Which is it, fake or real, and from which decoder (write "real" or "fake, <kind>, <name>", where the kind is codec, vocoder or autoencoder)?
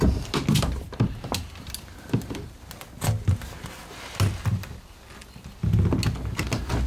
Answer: real